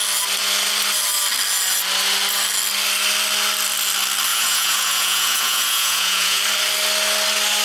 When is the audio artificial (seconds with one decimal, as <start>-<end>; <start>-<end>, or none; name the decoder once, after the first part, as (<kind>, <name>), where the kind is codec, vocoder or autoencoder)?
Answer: 4.3-6.4 (vocoder, Vocos)